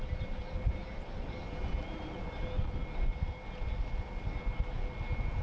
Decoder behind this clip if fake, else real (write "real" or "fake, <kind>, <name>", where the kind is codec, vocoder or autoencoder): real